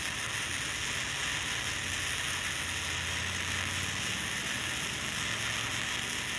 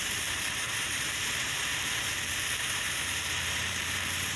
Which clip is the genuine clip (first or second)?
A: first